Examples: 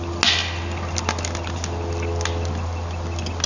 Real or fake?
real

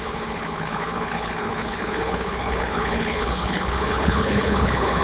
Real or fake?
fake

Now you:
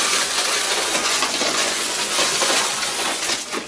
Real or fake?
fake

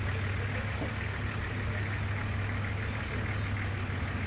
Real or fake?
real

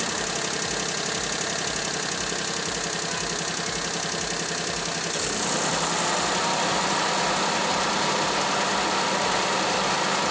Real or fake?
real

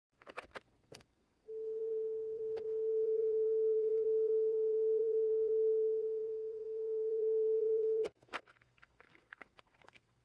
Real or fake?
fake